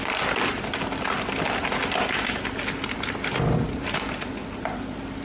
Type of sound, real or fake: real